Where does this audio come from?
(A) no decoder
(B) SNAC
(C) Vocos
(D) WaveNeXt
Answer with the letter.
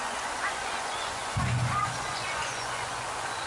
C